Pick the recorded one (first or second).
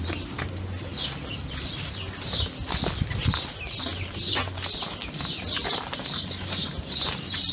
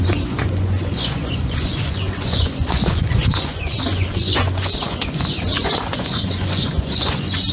first